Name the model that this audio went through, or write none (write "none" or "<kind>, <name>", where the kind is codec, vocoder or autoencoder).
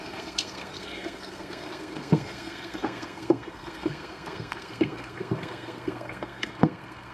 codec, SNAC